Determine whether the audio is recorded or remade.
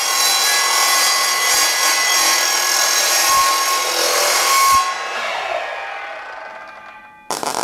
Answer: recorded